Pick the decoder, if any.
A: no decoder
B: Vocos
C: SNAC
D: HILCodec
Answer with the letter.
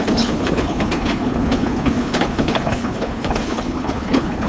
D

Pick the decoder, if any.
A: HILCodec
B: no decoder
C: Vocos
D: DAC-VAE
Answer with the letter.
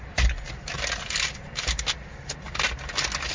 B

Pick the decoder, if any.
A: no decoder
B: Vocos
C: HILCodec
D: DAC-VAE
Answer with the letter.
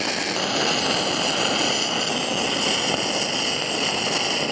A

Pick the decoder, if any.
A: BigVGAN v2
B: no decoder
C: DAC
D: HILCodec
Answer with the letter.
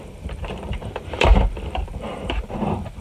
A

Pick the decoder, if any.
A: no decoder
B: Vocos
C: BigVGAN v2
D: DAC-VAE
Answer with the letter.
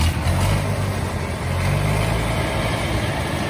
A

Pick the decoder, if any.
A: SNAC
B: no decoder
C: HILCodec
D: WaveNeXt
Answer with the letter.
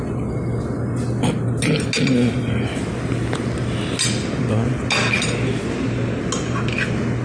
B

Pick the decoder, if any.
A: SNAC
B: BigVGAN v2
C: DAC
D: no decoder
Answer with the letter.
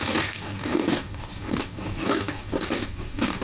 C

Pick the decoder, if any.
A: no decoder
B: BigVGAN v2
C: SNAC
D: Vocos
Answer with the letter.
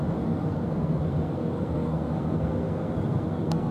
C